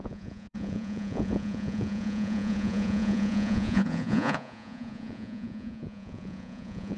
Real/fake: fake